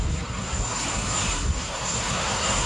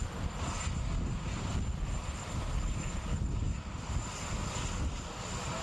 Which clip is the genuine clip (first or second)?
second